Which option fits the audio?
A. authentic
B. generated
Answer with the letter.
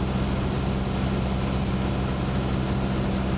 A